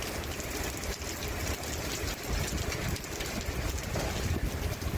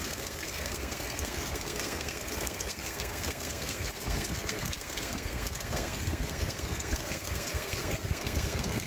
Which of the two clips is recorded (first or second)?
first